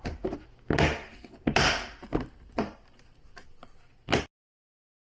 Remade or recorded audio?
recorded